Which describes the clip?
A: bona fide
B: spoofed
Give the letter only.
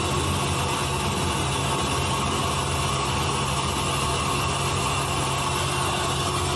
A